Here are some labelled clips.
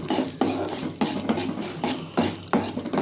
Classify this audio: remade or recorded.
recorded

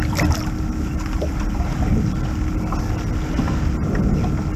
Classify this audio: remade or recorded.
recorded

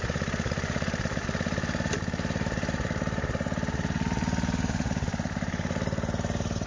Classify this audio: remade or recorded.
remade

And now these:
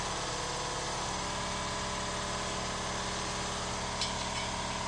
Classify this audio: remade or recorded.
recorded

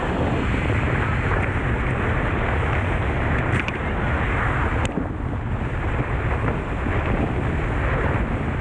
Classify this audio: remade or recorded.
recorded